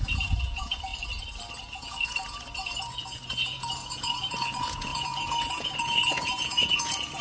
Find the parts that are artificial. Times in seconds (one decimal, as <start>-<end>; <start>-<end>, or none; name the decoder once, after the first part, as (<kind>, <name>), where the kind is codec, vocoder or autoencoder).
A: 0.0-0.9 (vocoder, Vocos); 1.6-7.2